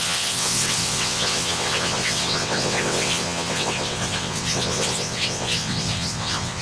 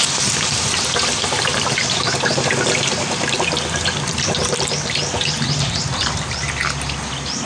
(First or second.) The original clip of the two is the second